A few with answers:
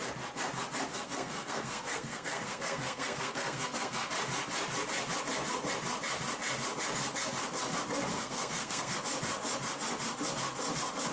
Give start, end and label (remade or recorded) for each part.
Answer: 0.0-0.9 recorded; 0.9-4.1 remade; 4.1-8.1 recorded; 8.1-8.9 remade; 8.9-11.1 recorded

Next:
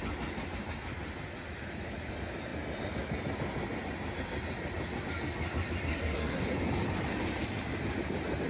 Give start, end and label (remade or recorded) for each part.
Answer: 0.0-5.9 recorded; 5.9-6.4 remade; 6.4-8.5 recorded

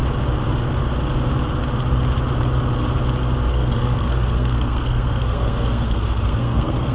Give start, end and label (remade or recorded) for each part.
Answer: 0.0-3.5 recorded; 3.5-6.9 remade

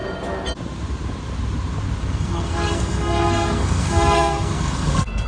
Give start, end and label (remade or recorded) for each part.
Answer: 0.0-2.0 recorded; 2.0-5.3 remade

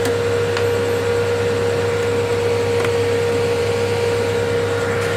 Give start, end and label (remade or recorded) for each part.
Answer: 0.0-5.2 recorded

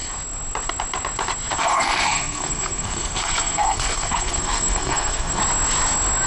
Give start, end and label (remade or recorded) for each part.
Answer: 0.0-1.6 recorded; 1.6-5.4 remade; 5.4-6.3 recorded

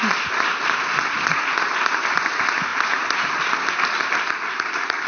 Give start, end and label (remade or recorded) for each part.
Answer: 0.0-5.1 recorded